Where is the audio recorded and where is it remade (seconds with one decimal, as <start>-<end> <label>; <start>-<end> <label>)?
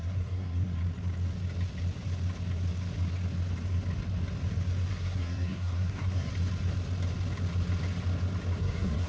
0.0-0.8 remade; 0.8-4.9 recorded; 4.9-6.3 remade; 6.3-8.6 recorded; 8.6-9.1 remade